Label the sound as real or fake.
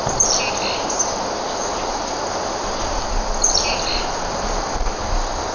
real